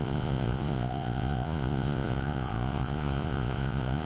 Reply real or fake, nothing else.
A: fake